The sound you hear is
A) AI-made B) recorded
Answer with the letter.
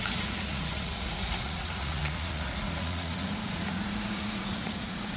A